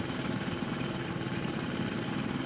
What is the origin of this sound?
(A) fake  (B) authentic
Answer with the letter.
A